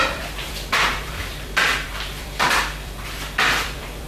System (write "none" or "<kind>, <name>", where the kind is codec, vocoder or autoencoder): vocoder, BigVGAN v2